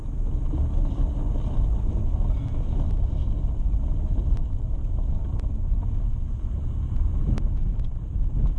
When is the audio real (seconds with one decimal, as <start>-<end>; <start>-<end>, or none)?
0.0-8.6